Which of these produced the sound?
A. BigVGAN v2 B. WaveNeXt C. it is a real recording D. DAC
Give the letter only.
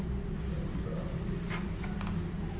C